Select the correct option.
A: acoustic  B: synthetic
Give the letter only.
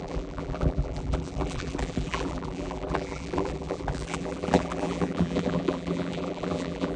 B